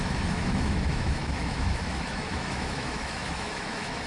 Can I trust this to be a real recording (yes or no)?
no